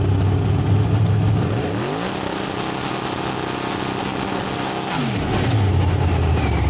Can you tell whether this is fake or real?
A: real